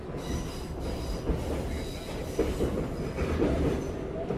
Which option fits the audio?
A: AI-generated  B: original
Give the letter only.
B